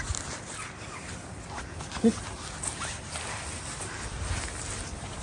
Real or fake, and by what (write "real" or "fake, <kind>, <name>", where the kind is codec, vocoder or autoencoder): real